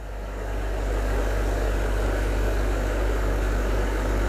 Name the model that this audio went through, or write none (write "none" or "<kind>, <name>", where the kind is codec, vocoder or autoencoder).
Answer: codec, DAC